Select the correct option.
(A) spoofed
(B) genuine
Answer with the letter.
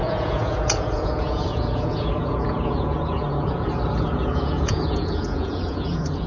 A